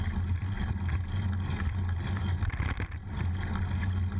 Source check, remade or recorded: recorded